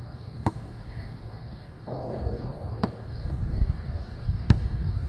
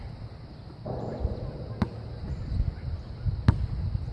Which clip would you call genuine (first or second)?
second